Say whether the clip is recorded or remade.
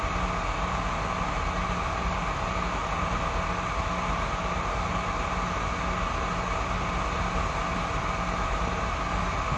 recorded